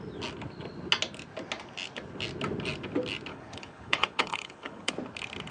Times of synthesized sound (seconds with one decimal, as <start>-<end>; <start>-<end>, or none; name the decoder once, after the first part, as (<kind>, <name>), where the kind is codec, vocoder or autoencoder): 3.3-4.9 (codec, HILCodec)